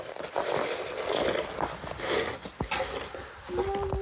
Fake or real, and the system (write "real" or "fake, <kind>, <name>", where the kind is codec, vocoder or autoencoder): real